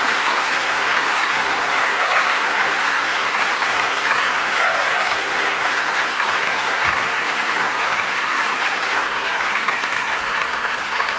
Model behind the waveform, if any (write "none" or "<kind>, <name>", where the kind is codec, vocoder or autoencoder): codec, SNAC